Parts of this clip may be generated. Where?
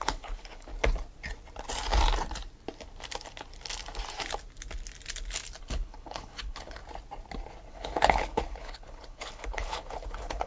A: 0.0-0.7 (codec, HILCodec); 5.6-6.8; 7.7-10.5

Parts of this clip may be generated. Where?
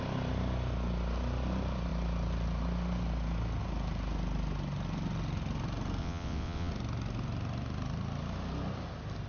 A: 6.0-6.7 (vocoder, WaveNeXt)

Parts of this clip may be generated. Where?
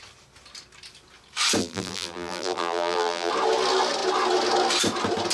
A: 1.6-3.3 (vocoder, BigVGAN v2)